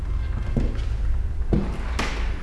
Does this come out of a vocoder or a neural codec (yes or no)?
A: no